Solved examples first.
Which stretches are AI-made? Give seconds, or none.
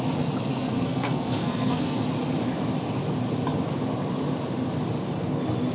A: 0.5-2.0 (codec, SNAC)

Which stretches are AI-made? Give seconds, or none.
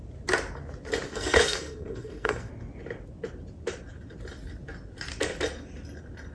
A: 1.1-2.5 (codec, SNAC)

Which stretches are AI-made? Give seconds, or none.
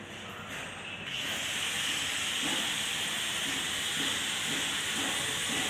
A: none